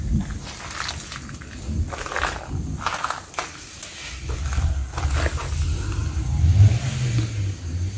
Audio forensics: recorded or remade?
recorded